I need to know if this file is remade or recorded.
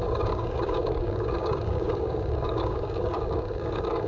remade